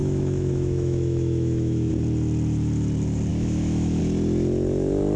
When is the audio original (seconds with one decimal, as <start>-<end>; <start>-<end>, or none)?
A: 1.9-3.3; 4.0-5.2